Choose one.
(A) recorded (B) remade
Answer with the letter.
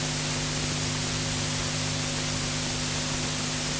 A